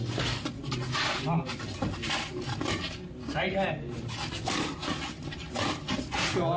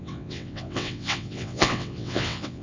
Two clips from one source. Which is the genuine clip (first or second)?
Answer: first